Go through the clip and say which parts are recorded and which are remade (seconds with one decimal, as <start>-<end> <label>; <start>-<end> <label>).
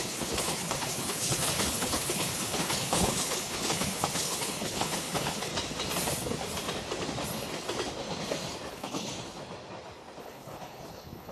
0.0-5.5 remade; 5.5-8.7 recorded; 8.7-9.1 remade; 9.1-10.2 recorded; 10.2-11.3 remade